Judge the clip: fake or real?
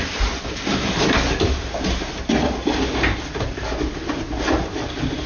real